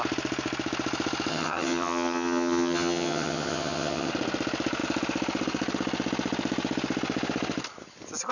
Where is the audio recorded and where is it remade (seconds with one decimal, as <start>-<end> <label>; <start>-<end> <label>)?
0.0-1.3 recorded; 1.3-4.1 remade; 4.1-8.3 recorded